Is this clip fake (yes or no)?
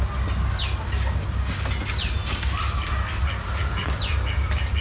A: no